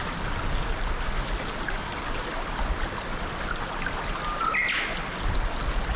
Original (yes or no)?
yes